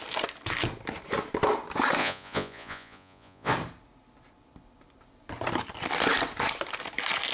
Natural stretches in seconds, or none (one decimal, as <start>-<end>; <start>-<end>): 0.0-2.0; 3.5-7.3